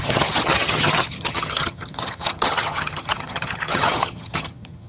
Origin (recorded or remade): remade